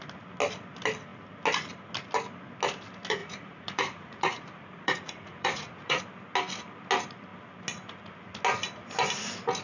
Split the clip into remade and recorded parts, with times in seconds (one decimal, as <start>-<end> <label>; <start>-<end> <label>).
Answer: 0.0-3.2 recorded; 3.2-6.0 remade; 6.0-9.6 recorded